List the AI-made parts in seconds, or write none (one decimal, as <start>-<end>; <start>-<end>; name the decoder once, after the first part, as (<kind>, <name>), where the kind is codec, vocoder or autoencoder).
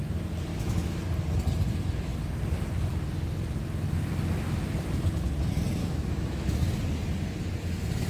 0.5-1.0 (autoencoder, DAC-VAE); 5.8-6.6